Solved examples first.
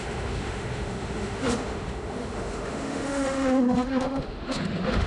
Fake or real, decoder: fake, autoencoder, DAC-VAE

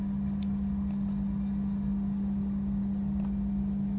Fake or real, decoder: real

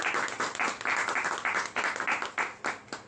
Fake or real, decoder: real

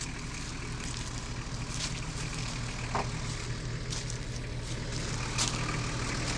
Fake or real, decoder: real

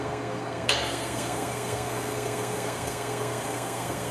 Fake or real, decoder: fake, codec, SNAC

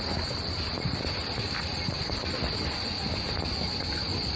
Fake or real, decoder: real